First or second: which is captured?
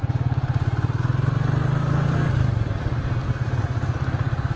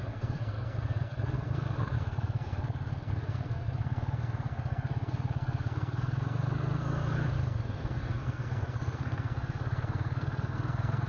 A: first